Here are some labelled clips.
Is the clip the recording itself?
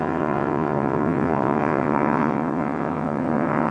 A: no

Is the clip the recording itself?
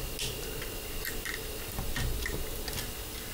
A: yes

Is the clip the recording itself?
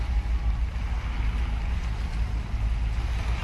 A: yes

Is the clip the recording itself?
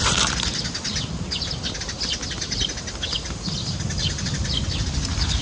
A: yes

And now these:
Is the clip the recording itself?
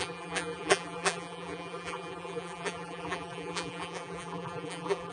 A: no